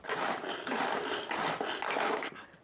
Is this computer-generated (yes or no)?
no